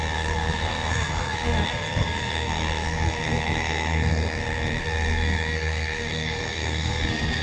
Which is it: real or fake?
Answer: fake